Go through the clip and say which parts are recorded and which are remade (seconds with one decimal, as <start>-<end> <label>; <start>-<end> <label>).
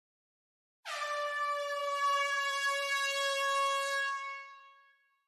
0.0-1.8 recorded; 1.8-5.3 remade